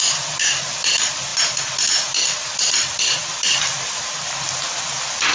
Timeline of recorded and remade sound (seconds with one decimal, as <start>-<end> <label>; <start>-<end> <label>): 0.0-5.3 recorded